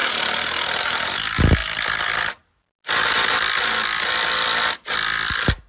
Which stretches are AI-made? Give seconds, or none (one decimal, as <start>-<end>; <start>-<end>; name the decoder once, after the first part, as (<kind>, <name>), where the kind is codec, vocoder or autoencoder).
none